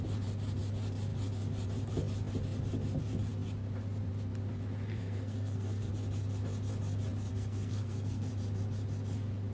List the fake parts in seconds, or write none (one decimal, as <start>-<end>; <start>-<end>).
4.9-5.9; 7.3-8.3